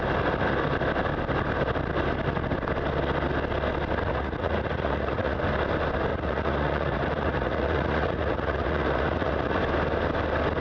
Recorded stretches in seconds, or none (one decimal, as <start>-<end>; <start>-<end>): 0.0-4.1; 5.4-6.1; 9.6-10.6